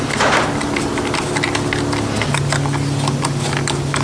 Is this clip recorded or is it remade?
recorded